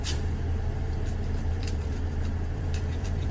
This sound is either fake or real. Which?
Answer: fake